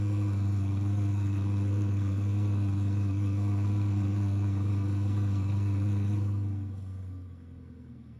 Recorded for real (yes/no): no